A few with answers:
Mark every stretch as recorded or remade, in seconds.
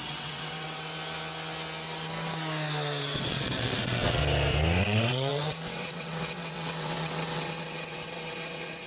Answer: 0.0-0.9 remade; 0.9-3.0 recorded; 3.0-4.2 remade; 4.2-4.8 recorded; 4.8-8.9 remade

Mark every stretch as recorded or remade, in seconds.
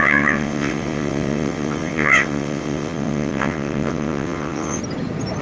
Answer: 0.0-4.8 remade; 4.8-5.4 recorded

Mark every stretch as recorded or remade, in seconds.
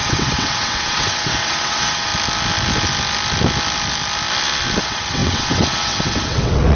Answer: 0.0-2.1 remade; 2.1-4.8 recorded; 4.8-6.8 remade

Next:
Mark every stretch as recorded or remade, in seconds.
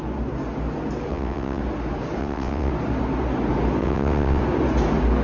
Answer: 0.0-1.1 recorded; 1.1-1.6 remade; 1.6-2.2 recorded; 2.2-2.7 remade; 2.7-3.8 recorded; 3.8-4.4 remade; 4.4-5.2 recorded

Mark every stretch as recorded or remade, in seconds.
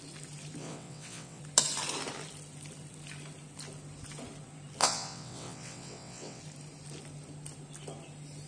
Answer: 0.0-0.6 recorded; 0.6-1.4 remade; 1.4-4.8 recorded; 4.8-6.4 remade; 6.4-8.5 recorded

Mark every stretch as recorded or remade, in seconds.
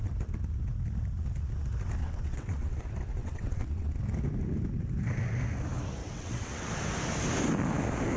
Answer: 0.0-2.0 recorded; 2.0-2.8 remade; 2.8-3.2 recorded; 3.2-3.9 remade; 3.9-6.0 recorded; 6.0-6.7 remade; 6.7-8.2 recorded